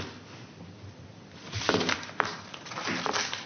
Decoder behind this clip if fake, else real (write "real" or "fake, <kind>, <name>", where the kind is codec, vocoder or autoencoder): fake, vocoder, BigVGAN v2